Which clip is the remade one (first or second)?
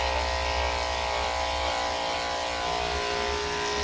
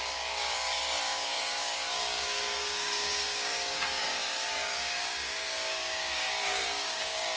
second